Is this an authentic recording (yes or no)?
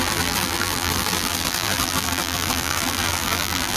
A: no